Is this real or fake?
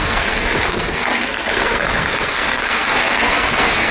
fake